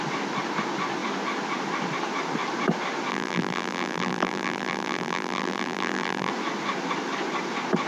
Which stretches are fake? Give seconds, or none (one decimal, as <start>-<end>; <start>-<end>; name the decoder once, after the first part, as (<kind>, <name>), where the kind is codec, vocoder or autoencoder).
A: 3.1-6.3 (vocoder, BigVGAN v2)